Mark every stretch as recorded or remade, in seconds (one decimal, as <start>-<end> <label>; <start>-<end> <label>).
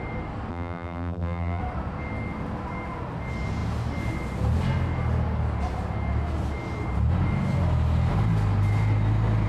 0.0-0.5 recorded; 0.5-1.6 remade; 1.6-9.5 recorded